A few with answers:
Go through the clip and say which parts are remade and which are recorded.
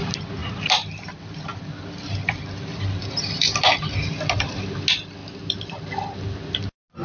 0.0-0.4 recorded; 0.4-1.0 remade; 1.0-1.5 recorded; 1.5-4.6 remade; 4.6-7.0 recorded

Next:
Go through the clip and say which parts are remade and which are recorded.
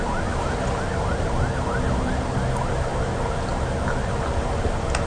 0.0-5.1 recorded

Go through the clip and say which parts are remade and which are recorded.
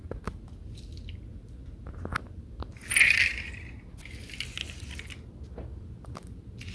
0.0-6.7 recorded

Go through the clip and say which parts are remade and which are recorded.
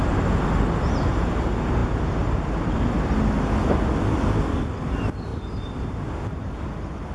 0.0-5.3 recorded; 5.3-6.5 remade; 6.5-7.1 recorded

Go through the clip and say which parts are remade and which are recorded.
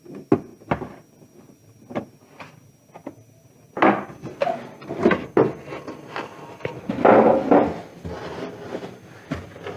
0.0-9.8 recorded